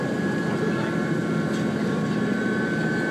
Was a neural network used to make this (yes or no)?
no